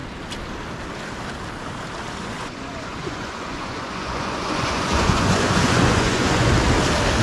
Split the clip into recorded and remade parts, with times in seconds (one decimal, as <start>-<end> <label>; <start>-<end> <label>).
0.0-2.2 recorded; 2.2-6.5 remade; 6.5-7.2 recorded